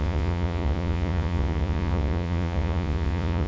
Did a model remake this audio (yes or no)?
yes